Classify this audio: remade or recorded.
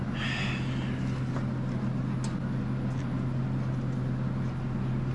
recorded